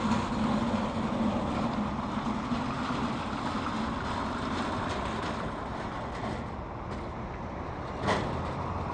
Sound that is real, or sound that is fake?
real